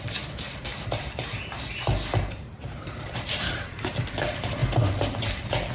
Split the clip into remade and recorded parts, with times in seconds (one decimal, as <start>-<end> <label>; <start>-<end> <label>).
0.0-0.7 recorded; 0.7-3.8 remade; 3.8-4.6 recorded; 4.6-5.7 remade